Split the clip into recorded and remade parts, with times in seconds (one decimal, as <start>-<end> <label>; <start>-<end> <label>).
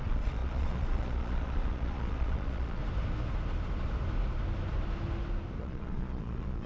0.0-2.8 remade; 2.8-5.6 recorded; 5.6-6.7 remade